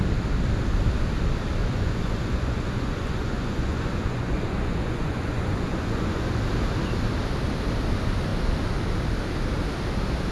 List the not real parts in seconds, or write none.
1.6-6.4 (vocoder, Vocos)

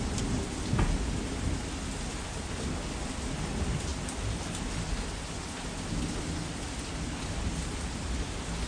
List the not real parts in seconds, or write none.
none

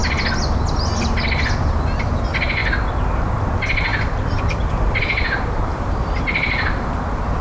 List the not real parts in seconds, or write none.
3.9-5.0 (vocoder, BigVGAN v2); 5.7-6.9

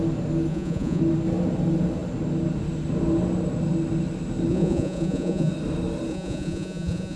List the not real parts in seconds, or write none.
0.5-1.0 (vocoder, Vocos); 4.5-5.5; 6.1-7.2